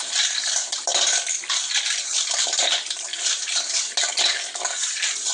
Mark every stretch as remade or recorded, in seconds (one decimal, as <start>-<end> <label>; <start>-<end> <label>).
0.0-5.3 recorded